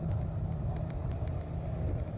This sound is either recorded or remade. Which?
recorded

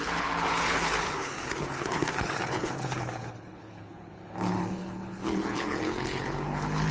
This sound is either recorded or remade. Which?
remade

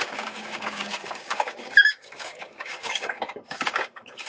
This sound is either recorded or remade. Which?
remade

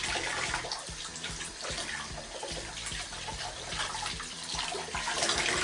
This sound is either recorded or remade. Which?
recorded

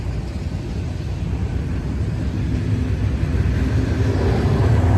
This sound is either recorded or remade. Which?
recorded